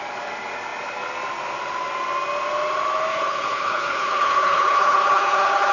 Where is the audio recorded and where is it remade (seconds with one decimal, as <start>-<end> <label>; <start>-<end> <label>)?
0.0-3.1 recorded; 3.1-5.7 remade